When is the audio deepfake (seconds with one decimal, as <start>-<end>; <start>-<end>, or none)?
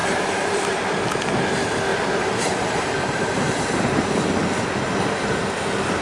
0.0-1.5; 1.9-4.2